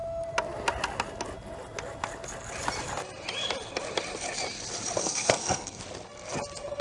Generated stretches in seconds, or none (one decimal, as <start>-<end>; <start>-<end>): 5.0-5.8